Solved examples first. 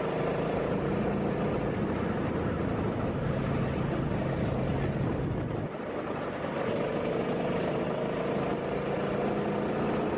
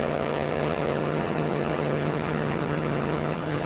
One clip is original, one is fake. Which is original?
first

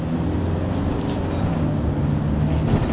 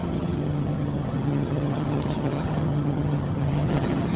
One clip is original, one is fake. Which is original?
first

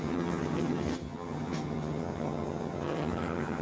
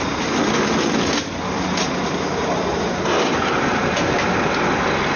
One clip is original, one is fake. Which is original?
second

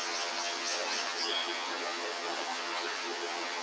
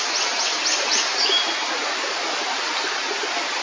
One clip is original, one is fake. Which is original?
second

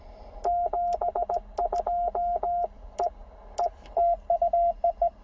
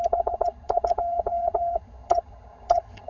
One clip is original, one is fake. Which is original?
first